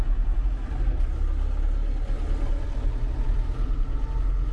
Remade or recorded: recorded